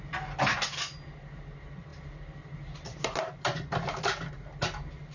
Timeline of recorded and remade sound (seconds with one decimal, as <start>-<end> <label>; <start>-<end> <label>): 0.0-5.1 recorded